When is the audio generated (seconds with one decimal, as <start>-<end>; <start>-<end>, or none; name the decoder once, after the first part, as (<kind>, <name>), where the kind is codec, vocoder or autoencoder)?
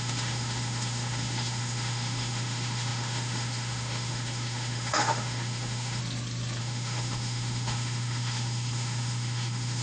0.0-6.0 (autoencoder, DAC-VAE); 6.6-9.8